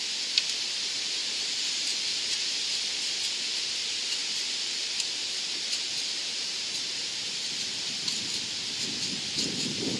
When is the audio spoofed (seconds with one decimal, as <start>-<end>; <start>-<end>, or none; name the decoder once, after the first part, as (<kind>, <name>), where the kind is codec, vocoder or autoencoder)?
1.2-2.3 (vocoder, BigVGAN v2); 4.2-6.6